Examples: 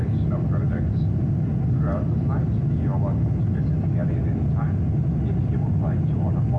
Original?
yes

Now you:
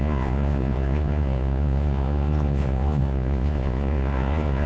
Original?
no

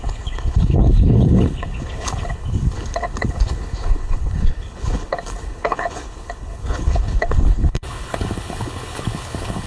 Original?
no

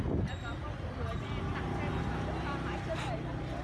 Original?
yes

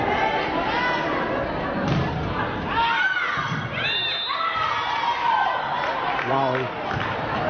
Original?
yes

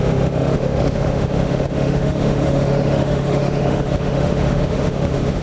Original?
no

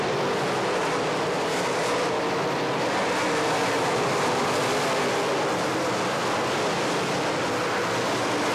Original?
yes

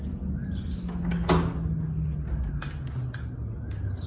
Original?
yes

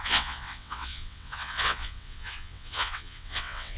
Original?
no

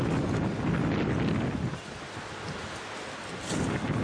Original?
yes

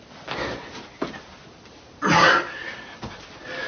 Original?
yes